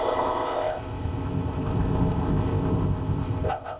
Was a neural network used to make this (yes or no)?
yes